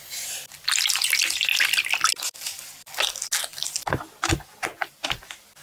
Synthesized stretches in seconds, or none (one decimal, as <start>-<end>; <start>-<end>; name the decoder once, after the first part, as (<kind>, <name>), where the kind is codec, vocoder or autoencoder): 3.5-5.6 (vocoder, BigVGAN v2)